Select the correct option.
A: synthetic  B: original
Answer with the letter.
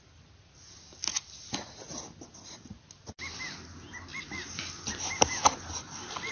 B